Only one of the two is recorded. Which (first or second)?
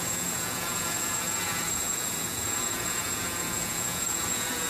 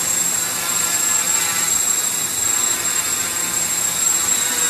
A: second